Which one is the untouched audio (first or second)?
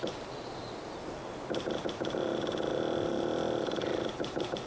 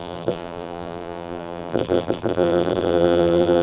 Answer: first